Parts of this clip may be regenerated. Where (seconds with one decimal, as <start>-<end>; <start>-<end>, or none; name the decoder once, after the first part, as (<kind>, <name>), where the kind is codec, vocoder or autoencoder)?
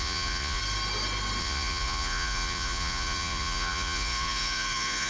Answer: 0.0-0.6 (vocoder, Vocos); 1.4-5.1